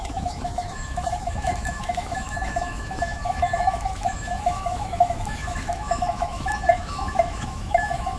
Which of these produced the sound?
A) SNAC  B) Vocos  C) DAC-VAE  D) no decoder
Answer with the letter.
C